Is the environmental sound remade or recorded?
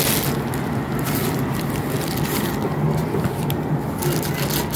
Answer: recorded